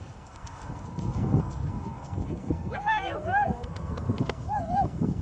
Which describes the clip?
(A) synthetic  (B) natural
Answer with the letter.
A